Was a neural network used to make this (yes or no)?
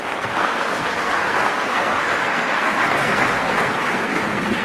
yes